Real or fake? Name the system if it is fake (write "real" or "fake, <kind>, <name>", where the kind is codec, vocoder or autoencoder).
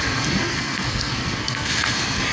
fake, codec, SNAC